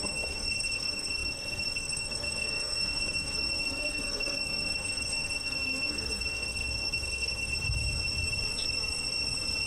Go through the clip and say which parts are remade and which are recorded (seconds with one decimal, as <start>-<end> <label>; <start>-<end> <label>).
0.0-7.5 remade; 7.5-9.7 recorded